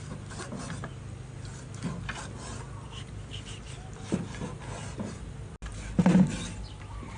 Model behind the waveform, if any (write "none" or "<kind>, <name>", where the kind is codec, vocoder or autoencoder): none